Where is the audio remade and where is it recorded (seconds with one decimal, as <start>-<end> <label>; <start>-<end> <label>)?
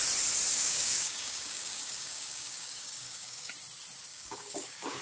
0.0-0.5 recorded; 0.5-3.5 remade; 3.5-4.1 recorded; 4.1-5.0 remade